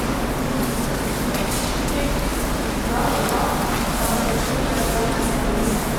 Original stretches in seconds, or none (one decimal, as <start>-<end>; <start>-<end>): 0.0-6.0